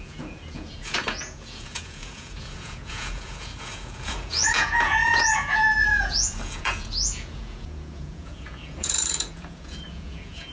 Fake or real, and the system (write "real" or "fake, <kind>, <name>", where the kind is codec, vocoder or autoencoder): fake, vocoder, Vocos